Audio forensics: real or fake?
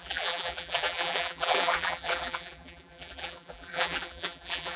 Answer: fake